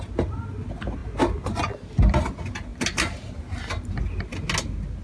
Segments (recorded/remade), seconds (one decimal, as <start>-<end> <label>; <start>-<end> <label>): 0.0-5.0 recorded